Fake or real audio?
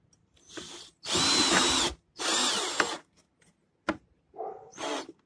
real